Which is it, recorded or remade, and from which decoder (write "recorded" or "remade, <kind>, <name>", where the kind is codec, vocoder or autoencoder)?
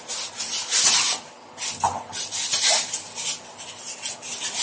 recorded